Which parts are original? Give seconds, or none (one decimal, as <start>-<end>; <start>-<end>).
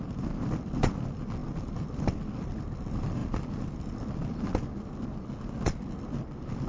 0.0-6.7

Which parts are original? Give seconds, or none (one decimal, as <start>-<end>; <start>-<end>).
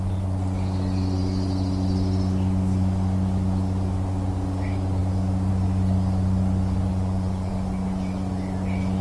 0.0-6.9; 7.5-9.0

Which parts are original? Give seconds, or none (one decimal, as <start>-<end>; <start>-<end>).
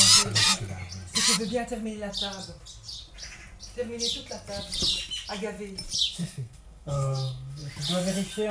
0.0-6.2; 7.7-8.5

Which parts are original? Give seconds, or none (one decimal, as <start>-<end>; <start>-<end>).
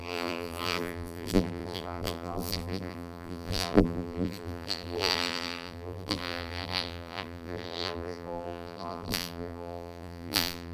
none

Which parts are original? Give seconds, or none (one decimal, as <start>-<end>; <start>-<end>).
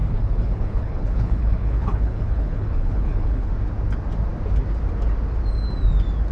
3.5-6.3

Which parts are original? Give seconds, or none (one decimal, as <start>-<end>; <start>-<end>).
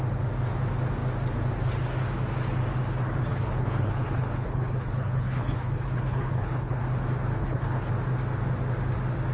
0.0-3.3; 6.8-7.4; 7.9-9.3